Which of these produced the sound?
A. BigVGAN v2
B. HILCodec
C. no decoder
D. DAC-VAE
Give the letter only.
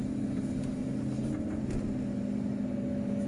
C